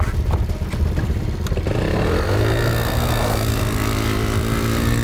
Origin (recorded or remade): recorded